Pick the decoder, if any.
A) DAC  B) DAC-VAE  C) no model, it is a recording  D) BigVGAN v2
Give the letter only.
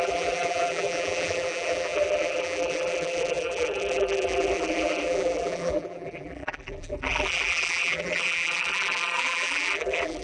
D